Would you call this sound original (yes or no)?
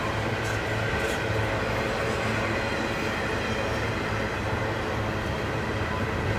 yes